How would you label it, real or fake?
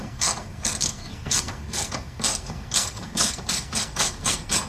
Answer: fake